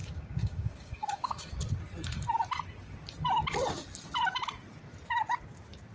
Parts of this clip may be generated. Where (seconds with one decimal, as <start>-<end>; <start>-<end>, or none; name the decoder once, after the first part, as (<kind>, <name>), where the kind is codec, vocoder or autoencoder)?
0.0-1.5 (codec, DAC)